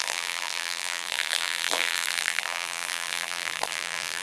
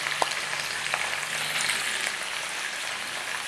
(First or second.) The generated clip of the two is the first